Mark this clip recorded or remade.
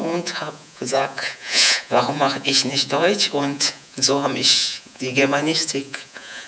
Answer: remade